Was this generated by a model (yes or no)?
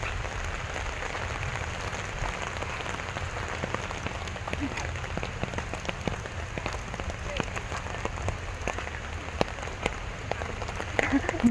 no